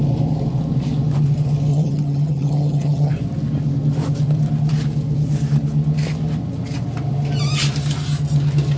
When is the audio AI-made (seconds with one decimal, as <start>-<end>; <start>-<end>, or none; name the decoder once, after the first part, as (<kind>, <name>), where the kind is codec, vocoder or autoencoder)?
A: 1.7-3.1 (vocoder, HiFi-GAN)